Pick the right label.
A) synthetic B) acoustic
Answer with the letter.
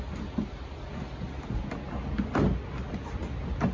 B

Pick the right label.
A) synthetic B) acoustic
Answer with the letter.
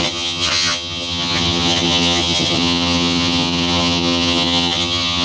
A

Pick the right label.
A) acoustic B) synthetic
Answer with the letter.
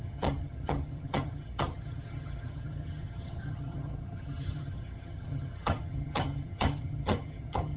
B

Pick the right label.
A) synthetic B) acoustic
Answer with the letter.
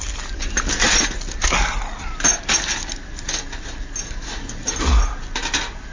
B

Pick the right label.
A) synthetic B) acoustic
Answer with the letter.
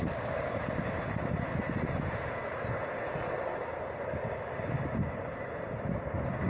B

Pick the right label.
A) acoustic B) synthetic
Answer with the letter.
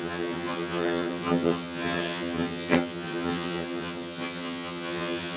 B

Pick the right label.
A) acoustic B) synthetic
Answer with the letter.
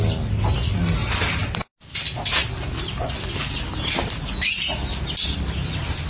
A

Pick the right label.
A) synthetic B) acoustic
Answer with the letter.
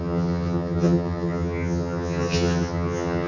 A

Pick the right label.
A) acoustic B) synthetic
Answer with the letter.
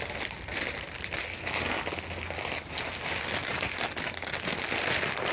A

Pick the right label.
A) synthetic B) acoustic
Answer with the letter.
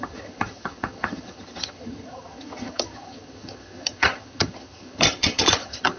A